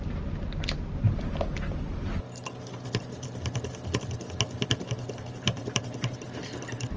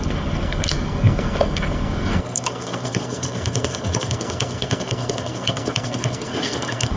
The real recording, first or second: first